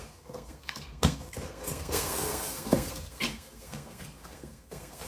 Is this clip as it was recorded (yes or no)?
no